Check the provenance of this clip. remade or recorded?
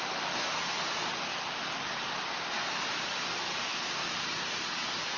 recorded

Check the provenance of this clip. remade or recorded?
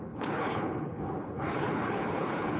remade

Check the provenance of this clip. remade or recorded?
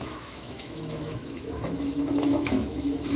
remade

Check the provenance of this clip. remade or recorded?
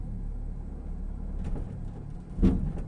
recorded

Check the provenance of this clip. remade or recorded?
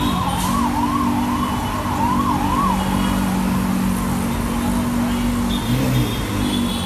recorded